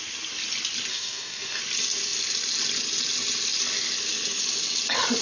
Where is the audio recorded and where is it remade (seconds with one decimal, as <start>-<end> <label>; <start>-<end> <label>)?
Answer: 0.0-0.9 recorded; 0.9-1.6 remade; 1.6-5.2 recorded